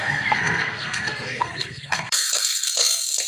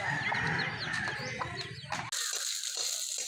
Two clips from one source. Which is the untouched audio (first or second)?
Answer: second